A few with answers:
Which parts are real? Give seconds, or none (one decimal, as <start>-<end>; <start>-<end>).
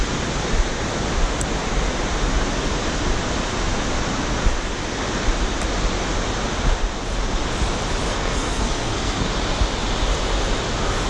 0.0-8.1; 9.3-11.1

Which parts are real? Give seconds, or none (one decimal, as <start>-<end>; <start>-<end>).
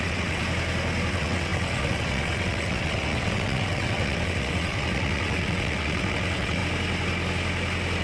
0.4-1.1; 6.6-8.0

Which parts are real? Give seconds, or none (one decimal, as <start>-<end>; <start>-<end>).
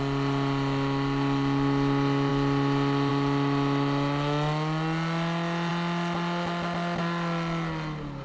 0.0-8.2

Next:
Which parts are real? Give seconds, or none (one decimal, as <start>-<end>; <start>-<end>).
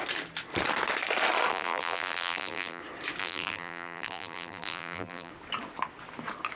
0.0-1.5; 2.8-3.2; 5.3-6.6